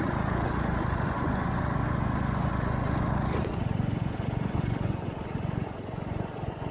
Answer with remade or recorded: remade